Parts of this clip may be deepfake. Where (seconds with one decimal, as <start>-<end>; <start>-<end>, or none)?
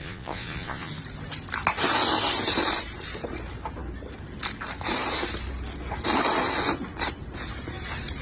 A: 0.0-0.9